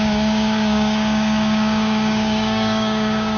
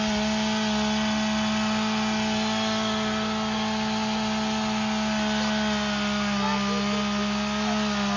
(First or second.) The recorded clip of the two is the second